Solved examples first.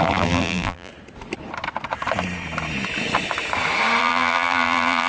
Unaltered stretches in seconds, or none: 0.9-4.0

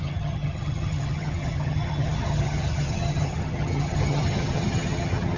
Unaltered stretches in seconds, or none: none

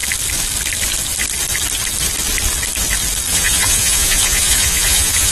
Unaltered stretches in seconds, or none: 0.0-3.3

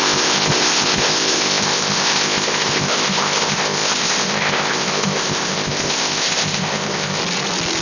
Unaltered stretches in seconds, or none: 7.2-7.8

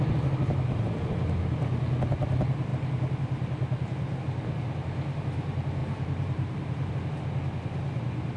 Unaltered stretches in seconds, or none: 0.0-5.8; 6.9-8.4

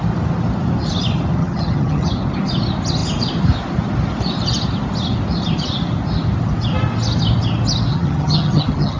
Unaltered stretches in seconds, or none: 0.0-1.4; 2.1-7.9

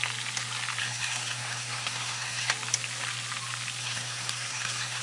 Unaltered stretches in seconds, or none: 0.0-0.8; 2.5-3.8

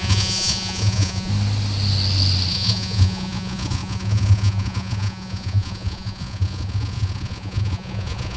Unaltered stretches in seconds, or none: 1.3-2.5